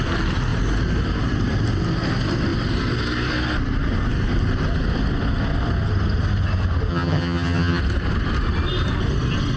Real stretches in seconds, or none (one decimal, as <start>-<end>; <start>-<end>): 0.0-6.9; 7.8-9.6